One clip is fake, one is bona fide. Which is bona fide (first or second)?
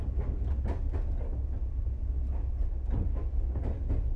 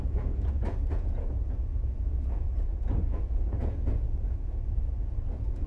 first